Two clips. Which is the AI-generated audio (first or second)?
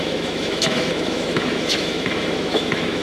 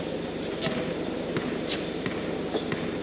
first